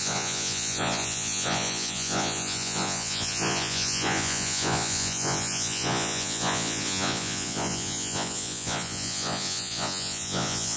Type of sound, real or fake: fake